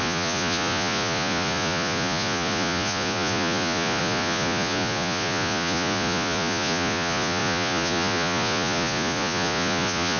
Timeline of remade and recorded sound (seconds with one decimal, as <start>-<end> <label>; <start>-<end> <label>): 0.0-10.2 remade

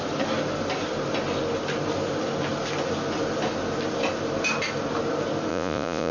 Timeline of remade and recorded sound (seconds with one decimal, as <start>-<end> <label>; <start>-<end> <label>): 0.0-5.5 recorded; 5.5-6.1 remade

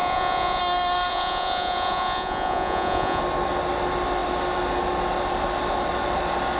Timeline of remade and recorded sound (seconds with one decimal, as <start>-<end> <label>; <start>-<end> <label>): 0.0-0.6 remade; 0.6-1.1 recorded; 1.1-3.2 remade; 3.2-6.6 recorded

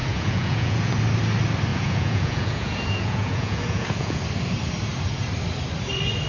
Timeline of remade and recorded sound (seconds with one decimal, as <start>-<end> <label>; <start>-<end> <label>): 0.0-0.9 remade; 0.9-1.7 recorded; 1.7-4.2 remade; 4.2-6.3 recorded

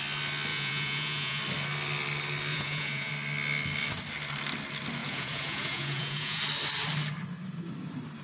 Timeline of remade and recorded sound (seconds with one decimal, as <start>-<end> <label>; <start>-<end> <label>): 0.0-0.5 recorded; 0.5-1.4 remade; 1.4-2.5 recorded; 2.5-3.1 remade; 3.1-5.0 recorded; 5.0-6.4 remade; 6.4-8.2 recorded

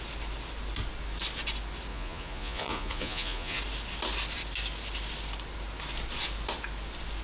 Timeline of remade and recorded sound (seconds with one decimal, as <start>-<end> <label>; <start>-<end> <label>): 0.0-1.9 recorded; 1.9-3.6 remade; 3.6-7.2 recorded

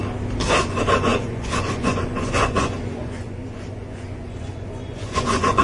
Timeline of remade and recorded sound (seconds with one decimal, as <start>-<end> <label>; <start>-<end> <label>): 0.0-0.6 recorded; 0.6-5.6 remade